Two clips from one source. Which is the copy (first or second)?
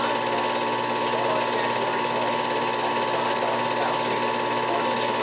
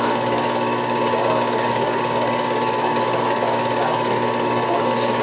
second